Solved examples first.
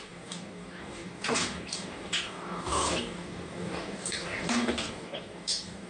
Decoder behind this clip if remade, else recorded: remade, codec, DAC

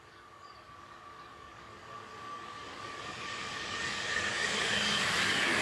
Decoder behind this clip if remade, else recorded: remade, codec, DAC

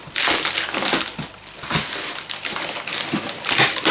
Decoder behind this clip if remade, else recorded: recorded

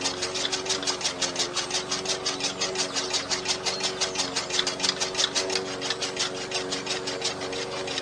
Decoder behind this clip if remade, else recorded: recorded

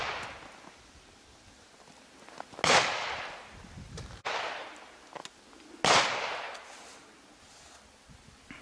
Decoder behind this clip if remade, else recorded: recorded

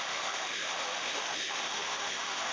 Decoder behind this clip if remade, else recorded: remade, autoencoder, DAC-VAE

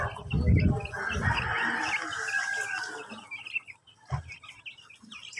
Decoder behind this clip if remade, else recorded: recorded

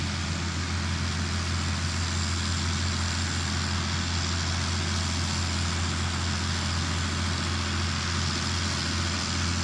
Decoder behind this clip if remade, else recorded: recorded